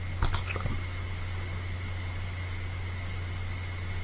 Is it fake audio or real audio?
real